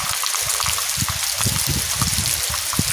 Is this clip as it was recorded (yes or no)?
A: yes